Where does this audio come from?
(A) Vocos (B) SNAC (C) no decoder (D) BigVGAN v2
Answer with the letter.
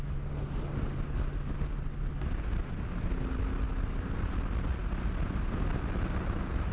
C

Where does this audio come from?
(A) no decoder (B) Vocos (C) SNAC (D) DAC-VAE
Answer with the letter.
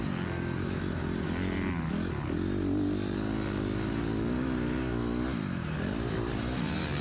A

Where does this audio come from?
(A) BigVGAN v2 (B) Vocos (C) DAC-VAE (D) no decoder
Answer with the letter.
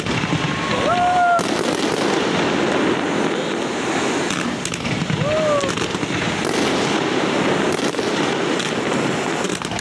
D